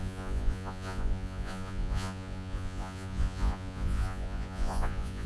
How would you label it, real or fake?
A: fake